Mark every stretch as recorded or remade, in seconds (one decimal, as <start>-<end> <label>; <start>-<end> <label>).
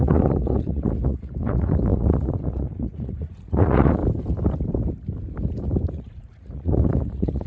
0.0-4.0 remade; 4.0-5.9 recorded; 5.9-7.5 remade